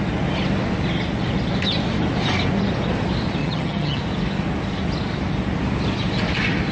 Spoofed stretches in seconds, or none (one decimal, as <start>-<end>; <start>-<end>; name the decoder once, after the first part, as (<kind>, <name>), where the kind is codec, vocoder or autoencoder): 3.4-4.0 (vocoder, HiFi-GAN)